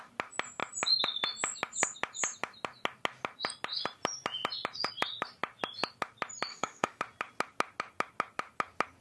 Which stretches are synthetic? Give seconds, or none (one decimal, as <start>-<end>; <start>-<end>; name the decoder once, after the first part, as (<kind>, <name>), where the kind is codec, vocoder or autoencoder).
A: 6.5-7.0 (autoencoder, DAC-VAE)